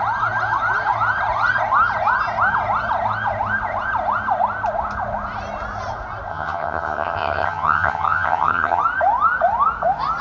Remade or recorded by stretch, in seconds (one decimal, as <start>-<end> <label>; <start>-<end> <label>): 0.0-6.3 recorded; 6.3-8.8 remade; 8.8-10.2 recorded